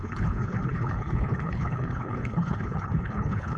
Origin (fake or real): fake